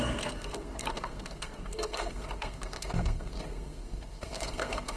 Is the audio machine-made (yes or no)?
yes